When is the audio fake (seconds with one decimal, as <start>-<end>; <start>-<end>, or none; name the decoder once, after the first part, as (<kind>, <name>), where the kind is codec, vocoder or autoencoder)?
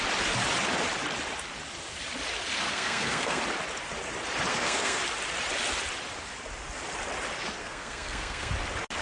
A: 2.7-3.4 (codec, SNAC); 4.5-5.0; 7.6-8.5